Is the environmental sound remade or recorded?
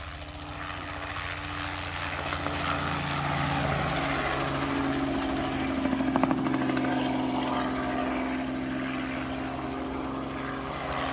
recorded